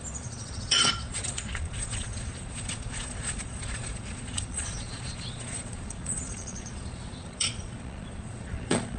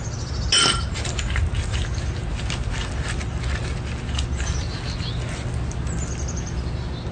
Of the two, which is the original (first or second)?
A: second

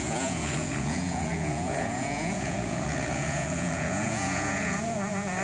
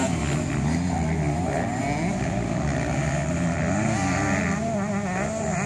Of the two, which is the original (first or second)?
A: second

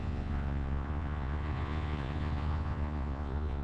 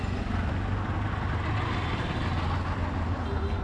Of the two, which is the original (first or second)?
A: second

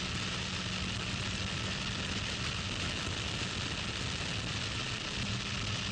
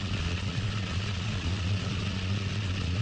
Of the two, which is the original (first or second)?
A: first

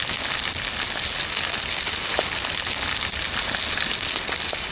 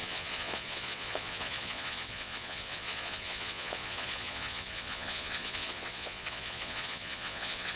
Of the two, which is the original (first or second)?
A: first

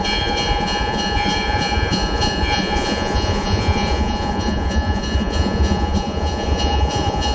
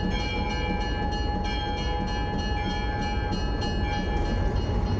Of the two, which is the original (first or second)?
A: second